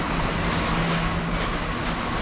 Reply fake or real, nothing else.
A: real